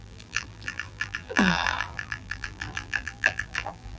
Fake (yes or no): yes